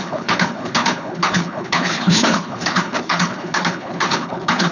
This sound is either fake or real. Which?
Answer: fake